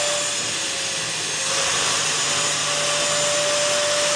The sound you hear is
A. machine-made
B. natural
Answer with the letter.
B